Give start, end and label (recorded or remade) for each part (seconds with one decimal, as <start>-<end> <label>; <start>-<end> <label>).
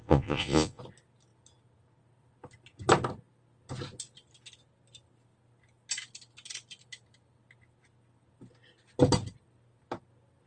0.0-0.8 remade; 0.8-10.5 recorded